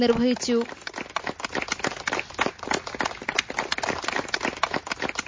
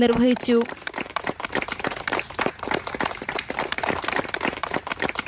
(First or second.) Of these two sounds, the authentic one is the first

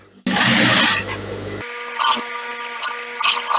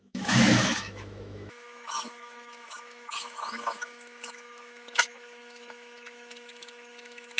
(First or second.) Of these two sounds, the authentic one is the first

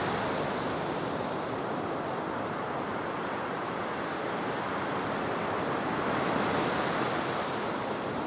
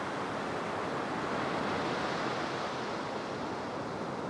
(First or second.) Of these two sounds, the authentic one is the second